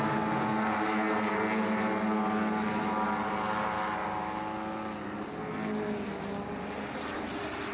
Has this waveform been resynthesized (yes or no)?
no